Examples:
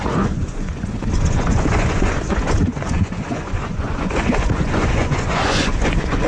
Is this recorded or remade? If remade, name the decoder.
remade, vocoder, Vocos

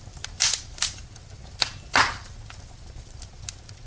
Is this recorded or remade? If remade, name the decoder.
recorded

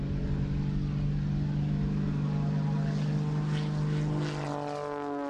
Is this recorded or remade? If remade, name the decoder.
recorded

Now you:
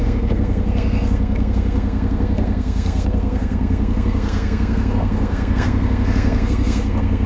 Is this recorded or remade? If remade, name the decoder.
remade, codec, SNAC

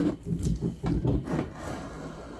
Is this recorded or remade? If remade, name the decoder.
recorded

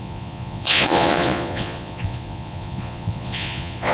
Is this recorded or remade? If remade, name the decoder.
remade, vocoder, Vocos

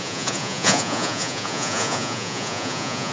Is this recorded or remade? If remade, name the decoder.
remade, vocoder, Vocos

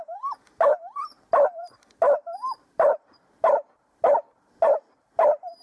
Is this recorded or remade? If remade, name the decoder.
remade, vocoder, BigVGAN v2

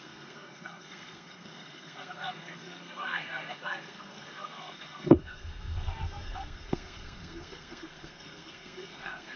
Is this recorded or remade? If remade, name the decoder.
remade, codec, SNAC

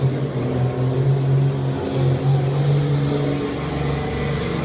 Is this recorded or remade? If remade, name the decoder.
recorded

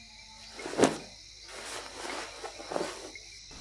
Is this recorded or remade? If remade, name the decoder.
recorded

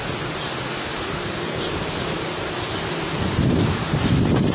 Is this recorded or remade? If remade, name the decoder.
recorded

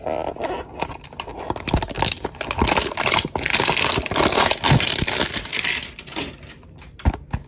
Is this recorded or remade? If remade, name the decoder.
recorded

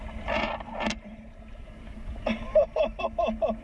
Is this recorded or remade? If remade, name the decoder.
recorded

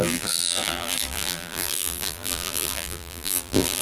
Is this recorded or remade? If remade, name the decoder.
remade, vocoder, BigVGAN v2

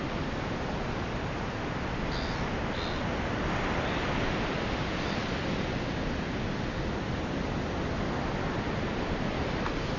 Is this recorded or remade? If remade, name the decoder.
recorded